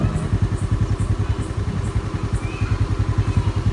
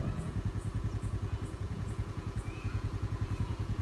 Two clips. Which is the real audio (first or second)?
first